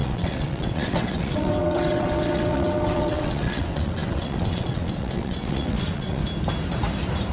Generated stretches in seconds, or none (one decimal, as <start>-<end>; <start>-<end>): 0.0-6.2